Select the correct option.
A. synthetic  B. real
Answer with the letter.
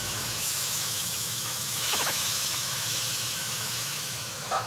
A